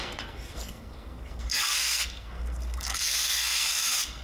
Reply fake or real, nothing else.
fake